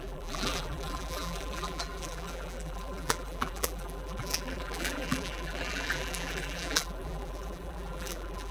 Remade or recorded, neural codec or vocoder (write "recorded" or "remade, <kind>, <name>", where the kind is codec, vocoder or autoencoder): remade, vocoder, BigVGAN v2